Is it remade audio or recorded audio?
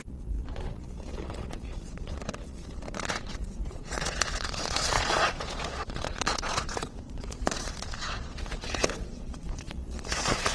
remade